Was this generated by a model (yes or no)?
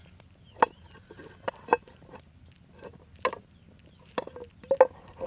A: no